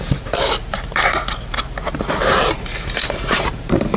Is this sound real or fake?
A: fake